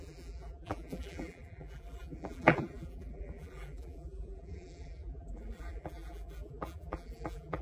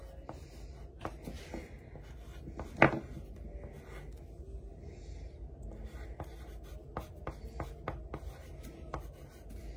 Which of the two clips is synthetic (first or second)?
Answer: first